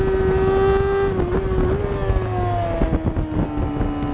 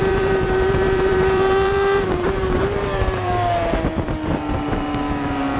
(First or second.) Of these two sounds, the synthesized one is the second